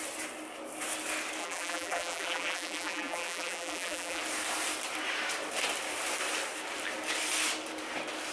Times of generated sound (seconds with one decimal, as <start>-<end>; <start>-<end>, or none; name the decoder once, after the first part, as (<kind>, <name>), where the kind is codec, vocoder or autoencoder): 1.4-4.2 (vocoder, BigVGAN v2)